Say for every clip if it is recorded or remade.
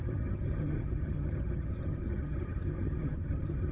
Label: remade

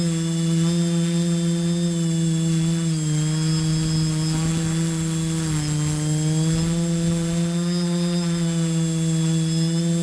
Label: recorded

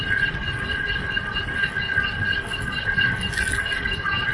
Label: recorded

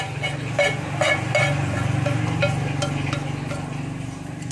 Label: recorded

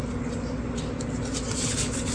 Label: recorded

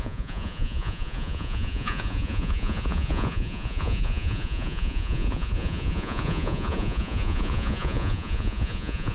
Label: remade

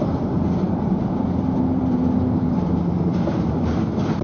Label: remade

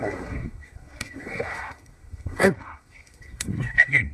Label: remade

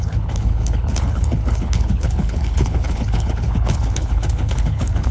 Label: remade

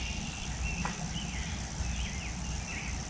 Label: recorded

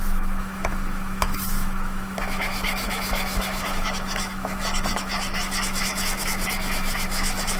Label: remade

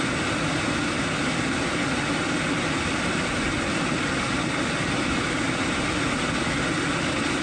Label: recorded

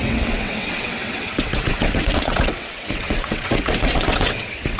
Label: remade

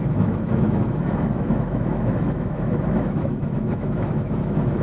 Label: remade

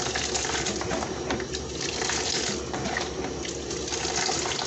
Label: recorded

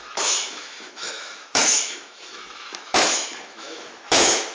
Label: remade